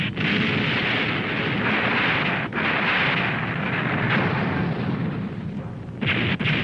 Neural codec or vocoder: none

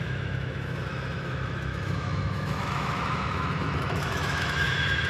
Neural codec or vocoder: autoencoder, DAC-VAE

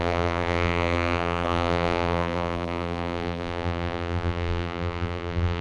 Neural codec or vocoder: vocoder, BigVGAN v2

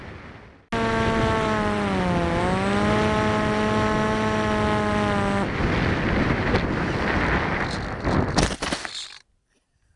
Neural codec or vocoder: none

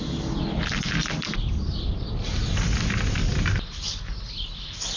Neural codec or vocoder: none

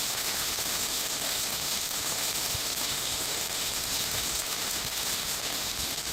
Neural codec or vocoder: autoencoder, DAC-VAE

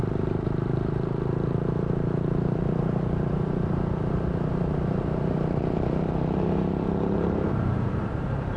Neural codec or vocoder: vocoder, BigVGAN v2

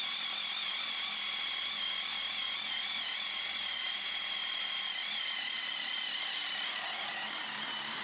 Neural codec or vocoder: none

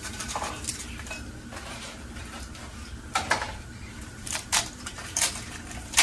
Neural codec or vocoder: vocoder, BigVGAN v2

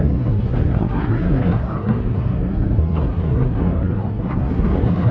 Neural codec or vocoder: codec, SNAC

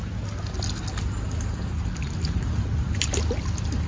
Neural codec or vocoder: none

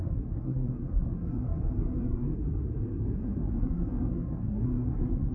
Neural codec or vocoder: codec, SNAC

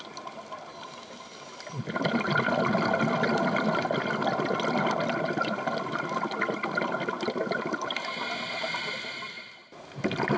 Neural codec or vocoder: none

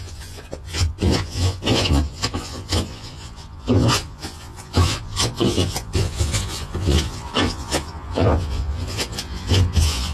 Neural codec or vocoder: vocoder, Vocos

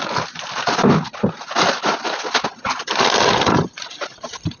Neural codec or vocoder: none